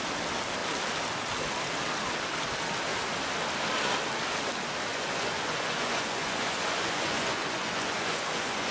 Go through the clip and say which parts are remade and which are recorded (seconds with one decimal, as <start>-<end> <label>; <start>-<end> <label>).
0.0-4.9 recorded; 4.9-8.7 remade